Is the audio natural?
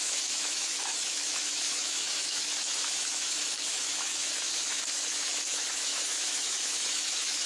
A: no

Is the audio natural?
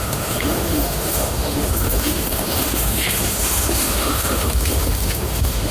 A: no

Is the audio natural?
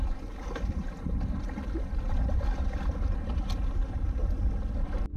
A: yes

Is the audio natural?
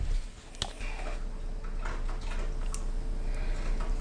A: yes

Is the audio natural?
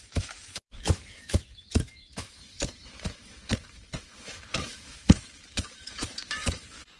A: no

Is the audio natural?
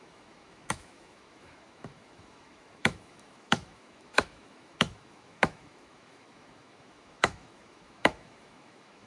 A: no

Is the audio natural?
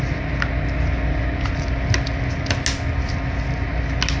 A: yes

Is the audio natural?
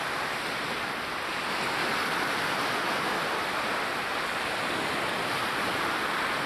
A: yes